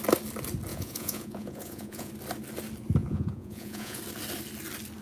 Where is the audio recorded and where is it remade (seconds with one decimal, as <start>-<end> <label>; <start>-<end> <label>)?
0.0-0.7 recorded; 0.7-2.1 remade; 2.1-3.0 recorded; 3.0-4.0 remade; 4.0-5.0 recorded